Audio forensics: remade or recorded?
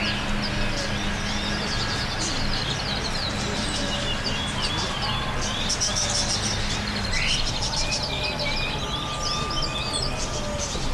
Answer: recorded